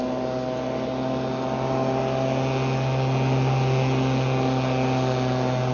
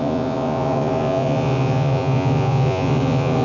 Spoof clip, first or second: second